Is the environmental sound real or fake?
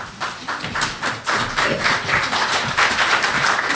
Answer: real